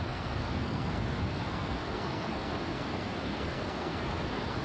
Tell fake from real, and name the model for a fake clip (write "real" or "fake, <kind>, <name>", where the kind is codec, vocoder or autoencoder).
fake, codec, SNAC